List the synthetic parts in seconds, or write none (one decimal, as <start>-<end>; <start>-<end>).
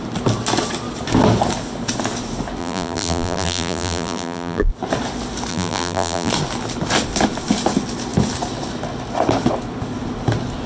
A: 2.6-4.7; 5.5-6.3